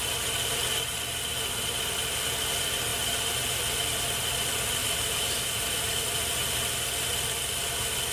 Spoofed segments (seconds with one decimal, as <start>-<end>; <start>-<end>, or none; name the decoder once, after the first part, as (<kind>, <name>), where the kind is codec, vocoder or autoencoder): 4.8-6.3 (vocoder, BigVGAN v2)